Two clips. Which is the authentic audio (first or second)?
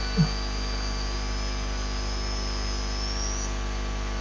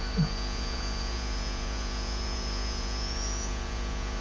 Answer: first